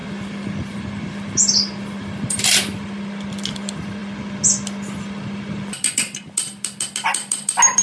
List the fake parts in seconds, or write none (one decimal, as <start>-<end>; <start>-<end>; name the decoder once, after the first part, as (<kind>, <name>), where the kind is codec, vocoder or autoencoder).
none